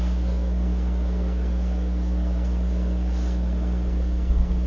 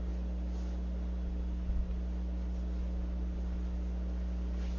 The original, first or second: second